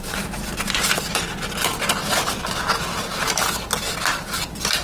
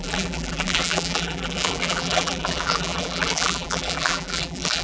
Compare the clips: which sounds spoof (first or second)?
second